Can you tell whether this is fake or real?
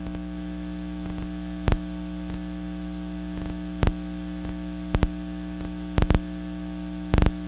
real